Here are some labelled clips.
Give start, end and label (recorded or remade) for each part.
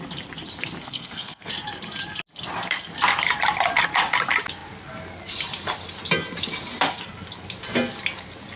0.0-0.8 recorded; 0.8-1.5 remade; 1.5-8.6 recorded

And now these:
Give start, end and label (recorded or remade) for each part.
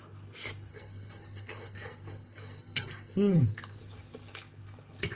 0.0-0.7 recorded; 0.7-3.8 remade; 3.8-5.2 recorded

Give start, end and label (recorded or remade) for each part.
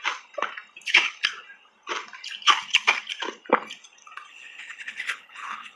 0.0-4.3 recorded; 4.3-5.8 remade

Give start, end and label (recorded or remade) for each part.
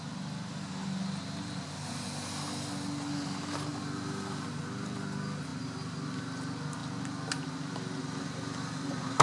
0.0-9.2 recorded